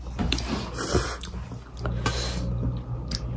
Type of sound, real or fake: real